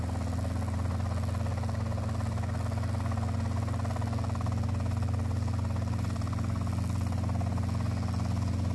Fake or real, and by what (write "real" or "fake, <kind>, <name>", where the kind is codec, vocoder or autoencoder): real